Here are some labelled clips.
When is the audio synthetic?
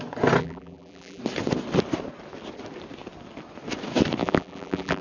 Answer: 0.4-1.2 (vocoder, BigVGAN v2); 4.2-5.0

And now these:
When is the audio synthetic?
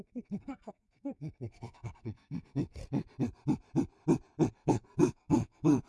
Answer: 0.0-2.8 (codec, SNAC); 4.5-5.9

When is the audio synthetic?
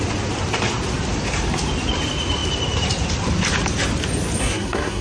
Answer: 4.4-5.0 (codec, SNAC)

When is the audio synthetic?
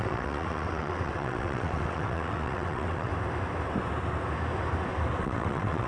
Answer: 0.0-3.1 (vocoder, WaveNeXt); 5.2-5.9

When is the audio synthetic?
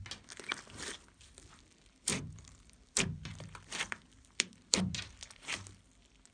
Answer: 2.1-5.3 (vocoder, BigVGAN v2)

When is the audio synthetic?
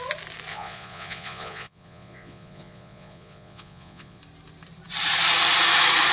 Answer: 0.5-4.2 (vocoder, Vocos)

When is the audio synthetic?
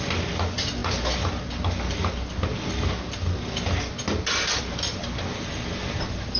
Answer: none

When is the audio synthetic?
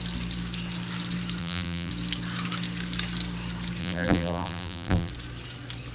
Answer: 1.4-1.9 (vocoder, BigVGAN v2); 3.8-5.1